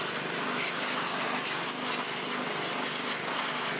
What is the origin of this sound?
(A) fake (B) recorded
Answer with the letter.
B